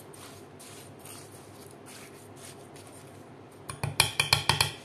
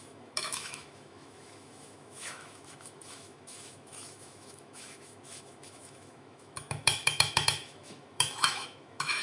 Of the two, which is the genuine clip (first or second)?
first